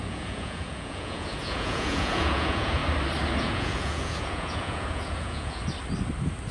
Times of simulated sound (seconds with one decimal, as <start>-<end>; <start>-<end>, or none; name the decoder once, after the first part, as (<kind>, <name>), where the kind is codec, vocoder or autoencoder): 0.0-2.8 (vocoder, Vocos); 3.4-5.6